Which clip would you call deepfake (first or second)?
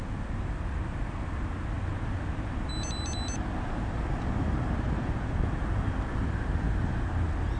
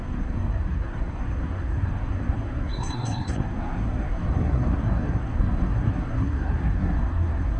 second